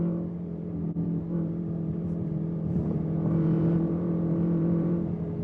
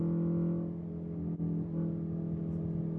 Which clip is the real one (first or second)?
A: second